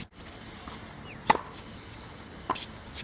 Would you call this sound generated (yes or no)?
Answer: no